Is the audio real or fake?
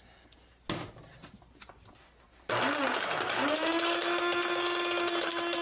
real